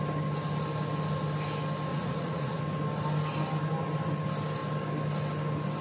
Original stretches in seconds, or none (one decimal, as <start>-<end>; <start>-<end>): 0.0-1.9; 2.6-5.8